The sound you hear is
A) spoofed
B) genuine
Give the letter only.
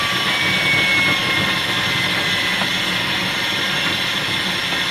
B